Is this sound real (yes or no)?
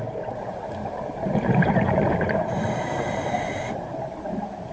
no